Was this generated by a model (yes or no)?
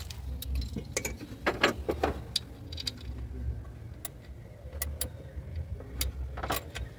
no